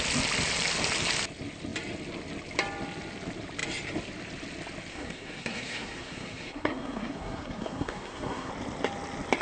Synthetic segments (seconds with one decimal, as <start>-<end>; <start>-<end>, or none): 4.9-8.5